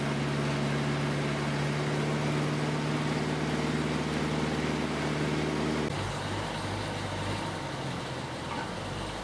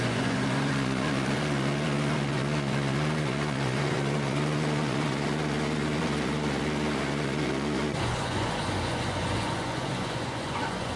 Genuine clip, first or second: first